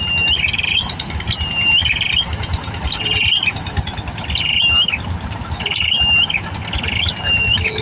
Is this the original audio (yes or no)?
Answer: yes